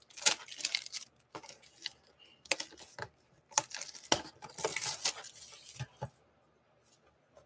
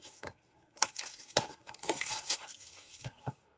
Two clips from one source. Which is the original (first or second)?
first